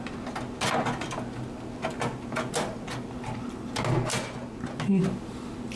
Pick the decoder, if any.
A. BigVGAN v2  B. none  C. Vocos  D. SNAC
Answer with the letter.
B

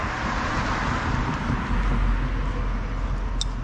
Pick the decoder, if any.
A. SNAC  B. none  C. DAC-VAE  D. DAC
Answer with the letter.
B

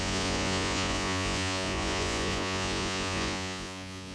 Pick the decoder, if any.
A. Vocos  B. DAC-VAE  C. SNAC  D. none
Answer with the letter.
A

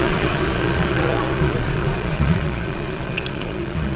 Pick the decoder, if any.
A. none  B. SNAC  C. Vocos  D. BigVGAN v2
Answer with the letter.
C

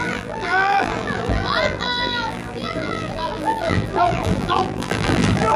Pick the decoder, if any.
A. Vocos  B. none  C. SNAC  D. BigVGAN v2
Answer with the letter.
D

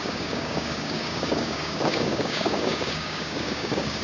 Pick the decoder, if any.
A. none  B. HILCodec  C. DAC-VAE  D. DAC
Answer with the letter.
D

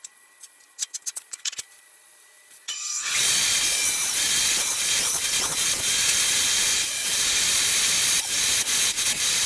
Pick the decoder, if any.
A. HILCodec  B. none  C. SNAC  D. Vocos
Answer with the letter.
D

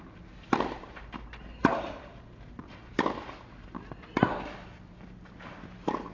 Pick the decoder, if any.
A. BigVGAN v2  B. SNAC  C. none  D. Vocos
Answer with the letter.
C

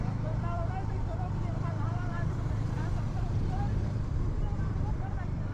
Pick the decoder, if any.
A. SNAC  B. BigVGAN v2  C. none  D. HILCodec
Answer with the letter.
B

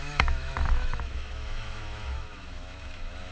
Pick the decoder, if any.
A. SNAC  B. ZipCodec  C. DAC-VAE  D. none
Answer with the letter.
C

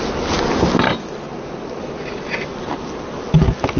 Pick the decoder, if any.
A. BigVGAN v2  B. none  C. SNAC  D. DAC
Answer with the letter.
B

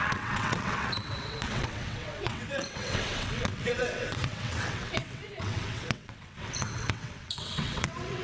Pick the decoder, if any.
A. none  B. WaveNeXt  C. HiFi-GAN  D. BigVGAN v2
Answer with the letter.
B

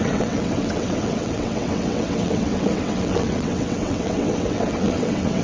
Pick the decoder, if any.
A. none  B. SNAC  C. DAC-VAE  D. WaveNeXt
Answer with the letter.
D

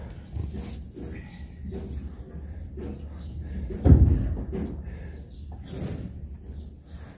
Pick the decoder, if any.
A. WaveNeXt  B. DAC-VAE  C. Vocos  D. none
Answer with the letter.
D